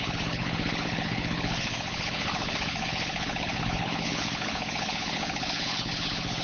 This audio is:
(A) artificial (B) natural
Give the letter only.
A